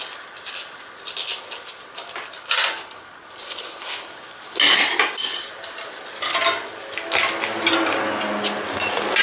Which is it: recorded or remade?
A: recorded